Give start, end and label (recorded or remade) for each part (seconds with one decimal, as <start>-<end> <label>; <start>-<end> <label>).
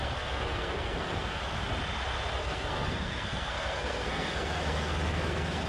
0.0-1.4 remade; 1.4-2.4 recorded; 2.4-5.7 remade